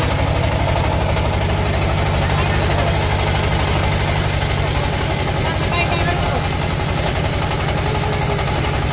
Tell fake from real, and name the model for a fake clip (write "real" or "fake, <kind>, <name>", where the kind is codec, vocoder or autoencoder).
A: real